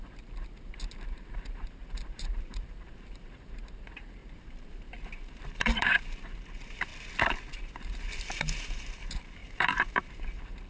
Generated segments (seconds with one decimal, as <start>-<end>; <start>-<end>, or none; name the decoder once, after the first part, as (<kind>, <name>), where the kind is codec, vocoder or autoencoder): 0.0-6.9 (vocoder, BigVGAN v2); 7.5-10.7